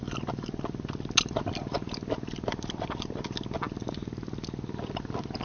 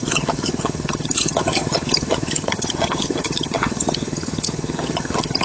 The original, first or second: first